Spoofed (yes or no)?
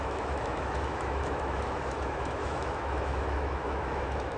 yes